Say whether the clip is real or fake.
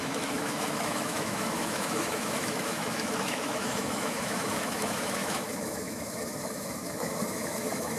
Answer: fake